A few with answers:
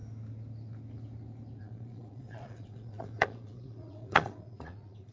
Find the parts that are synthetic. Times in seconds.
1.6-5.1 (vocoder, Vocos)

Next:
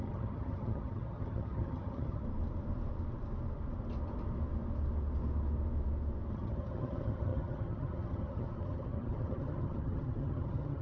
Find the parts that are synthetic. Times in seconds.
0.0-2.2 (vocoder, HiFi-GAN); 6.3-10.8

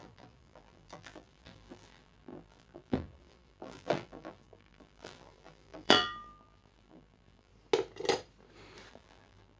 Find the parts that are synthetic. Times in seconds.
0.0-7.5 (vocoder, BigVGAN v2); 8.9-9.6

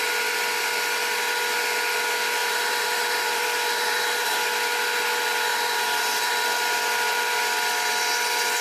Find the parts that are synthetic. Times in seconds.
2.4-4.4 (vocoder, BigVGAN v2); 5.5-6.3

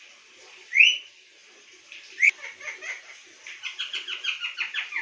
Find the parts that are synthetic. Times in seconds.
1.4-3.8 (vocoder, BigVGAN v2)

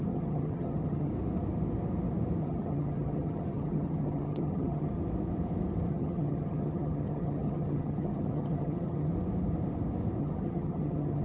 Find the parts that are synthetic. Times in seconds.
0.0-1.1 (vocoder, HiFi-GAN); 2.4-5.0; 5.9-9.1; 10.2-11.2

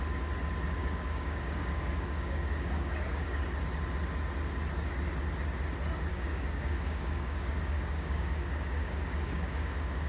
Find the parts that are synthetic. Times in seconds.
0.8-3.4 (codec, DAC); 6.1-10.1